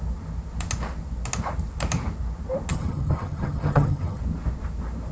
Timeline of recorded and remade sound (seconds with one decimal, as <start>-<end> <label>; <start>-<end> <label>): 0.0-2.7 recorded; 2.7-4.2 remade; 4.2-5.1 recorded